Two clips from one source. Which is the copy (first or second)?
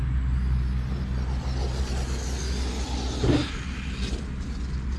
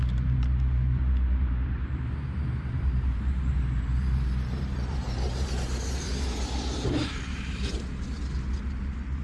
second